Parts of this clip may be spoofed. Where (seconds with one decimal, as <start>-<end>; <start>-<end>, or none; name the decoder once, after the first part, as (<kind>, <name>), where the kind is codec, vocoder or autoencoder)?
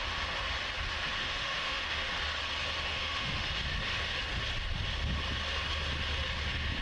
1.2-2.1 (autoencoder, DAC-VAE); 2.9-3.5